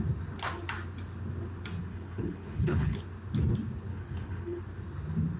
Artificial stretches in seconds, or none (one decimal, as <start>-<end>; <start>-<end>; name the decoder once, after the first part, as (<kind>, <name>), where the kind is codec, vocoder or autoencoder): 1.9-3.0 (codec, HILCodec); 3.9-4.6